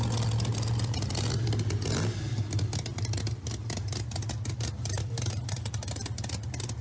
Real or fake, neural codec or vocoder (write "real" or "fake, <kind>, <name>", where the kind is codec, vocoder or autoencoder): real